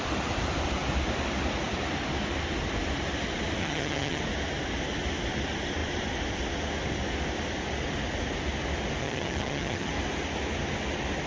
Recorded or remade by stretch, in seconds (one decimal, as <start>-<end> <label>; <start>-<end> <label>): 0.0-3.6 recorded; 3.6-4.2 remade; 4.2-9.0 recorded; 9.0-9.9 remade; 9.9-11.3 recorded